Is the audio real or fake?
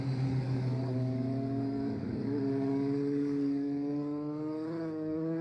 fake